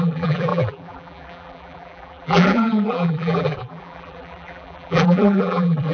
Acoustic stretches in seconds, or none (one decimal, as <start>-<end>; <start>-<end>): none